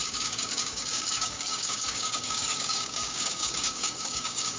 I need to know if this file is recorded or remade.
remade